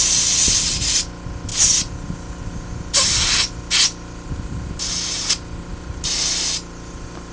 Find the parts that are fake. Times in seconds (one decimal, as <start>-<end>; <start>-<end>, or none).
none